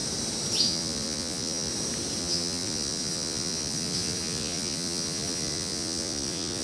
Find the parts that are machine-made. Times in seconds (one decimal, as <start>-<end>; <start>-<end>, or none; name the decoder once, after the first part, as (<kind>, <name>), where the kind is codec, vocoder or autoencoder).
0.6-1.7 (vocoder, Vocos); 2.2-6.6